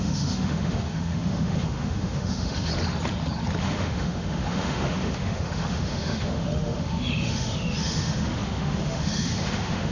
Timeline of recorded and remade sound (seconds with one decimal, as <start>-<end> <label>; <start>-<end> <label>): 0.0-2.7 remade; 2.7-3.6 recorded; 3.6-9.9 remade